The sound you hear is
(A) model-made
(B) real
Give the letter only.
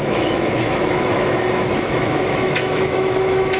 A